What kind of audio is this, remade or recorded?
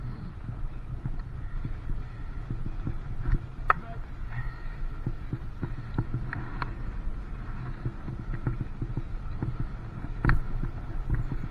recorded